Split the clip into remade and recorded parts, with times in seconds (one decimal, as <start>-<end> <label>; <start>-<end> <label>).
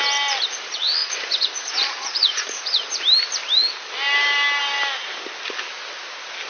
0.0-1.0 recorded; 1.0-3.0 remade; 3.0-6.5 recorded